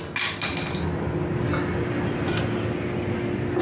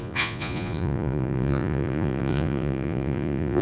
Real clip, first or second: first